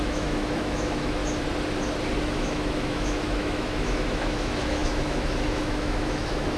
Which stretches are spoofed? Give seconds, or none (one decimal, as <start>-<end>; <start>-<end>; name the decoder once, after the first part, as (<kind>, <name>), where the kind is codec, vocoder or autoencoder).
0.0-1.2 (autoencoder, DAC-VAE); 2.2-6.6